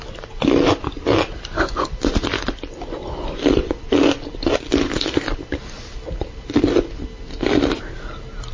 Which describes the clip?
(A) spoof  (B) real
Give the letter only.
B